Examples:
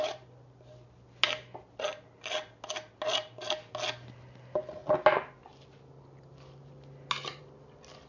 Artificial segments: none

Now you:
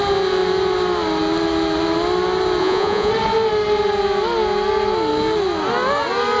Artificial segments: 2.6-3.1 (vocoder, Vocos)

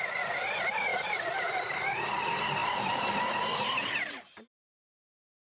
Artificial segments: 0.9-1.9 (vocoder, BigVGAN v2); 2.6-3.1

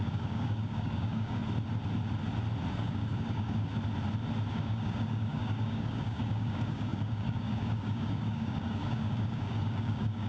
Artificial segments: 0.0-1.4 (codec, DAC); 2.7-3.7; 4.5-10.3